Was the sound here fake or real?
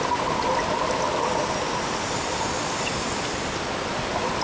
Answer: real